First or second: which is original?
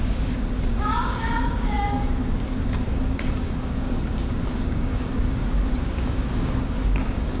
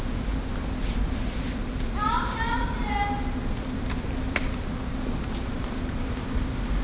second